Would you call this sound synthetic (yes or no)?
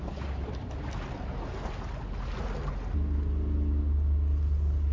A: no